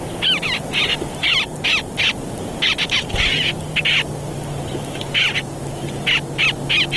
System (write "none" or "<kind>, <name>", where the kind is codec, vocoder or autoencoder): none